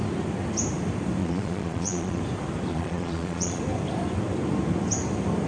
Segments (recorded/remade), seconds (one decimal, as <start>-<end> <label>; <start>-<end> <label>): 0.0-1.2 recorded; 1.2-2.2 remade; 2.2-2.7 recorded; 2.7-3.6 remade; 3.6-5.5 recorded